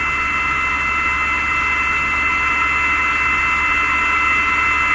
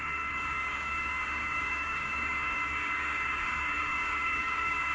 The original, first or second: first